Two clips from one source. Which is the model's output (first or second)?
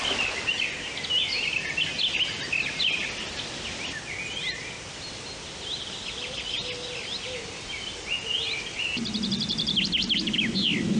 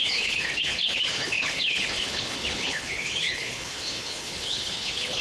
second